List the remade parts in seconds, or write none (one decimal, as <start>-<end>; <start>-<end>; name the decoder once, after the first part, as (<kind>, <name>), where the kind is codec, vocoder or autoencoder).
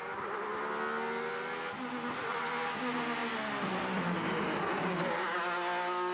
none